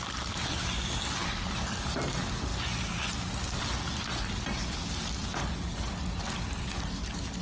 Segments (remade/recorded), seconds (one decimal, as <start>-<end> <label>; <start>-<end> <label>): 0.0-7.4 recorded